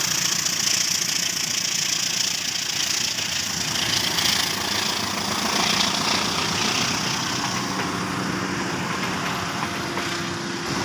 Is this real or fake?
real